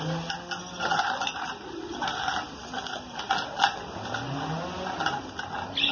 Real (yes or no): yes